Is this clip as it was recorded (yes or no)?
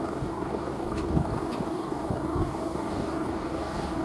no